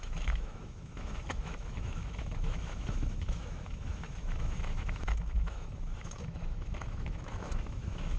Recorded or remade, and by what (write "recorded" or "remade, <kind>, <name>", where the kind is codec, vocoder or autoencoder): remade, autoencoder, DAC-VAE